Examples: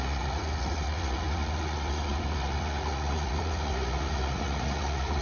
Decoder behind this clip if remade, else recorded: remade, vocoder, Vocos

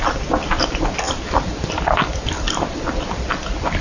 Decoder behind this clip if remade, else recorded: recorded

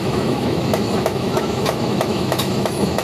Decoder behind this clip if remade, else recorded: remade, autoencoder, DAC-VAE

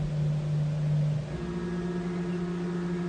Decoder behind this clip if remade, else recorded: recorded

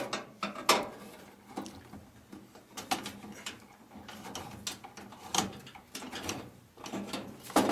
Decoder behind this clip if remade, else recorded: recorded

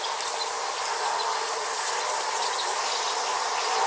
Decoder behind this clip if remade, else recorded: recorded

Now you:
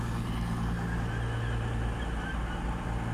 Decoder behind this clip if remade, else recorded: recorded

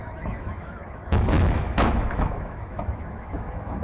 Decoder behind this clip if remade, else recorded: remade, autoencoder, DAC-VAE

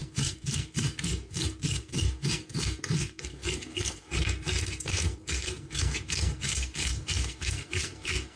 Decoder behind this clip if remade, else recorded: remade, codec, SNAC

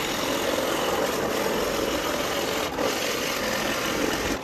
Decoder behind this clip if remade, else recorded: recorded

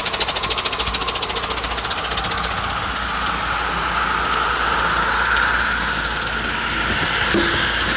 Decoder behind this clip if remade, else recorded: recorded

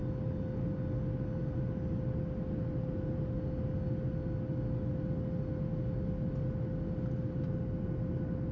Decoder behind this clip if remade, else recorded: recorded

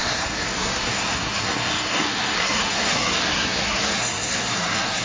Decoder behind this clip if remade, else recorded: remade, codec, SNAC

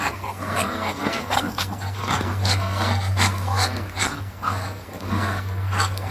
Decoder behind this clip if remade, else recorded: remade, codec, SNAC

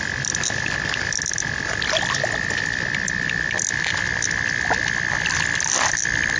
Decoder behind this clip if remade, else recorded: recorded